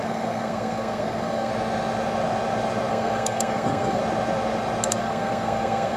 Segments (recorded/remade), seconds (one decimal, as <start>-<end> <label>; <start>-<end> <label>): 0.0-1.5 remade; 1.5-2.9 recorded; 2.9-4.0 remade; 4.0-4.9 recorded; 4.9-6.0 remade